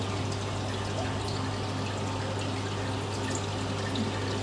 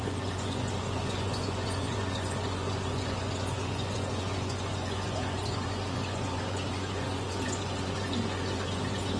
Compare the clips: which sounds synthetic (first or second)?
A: second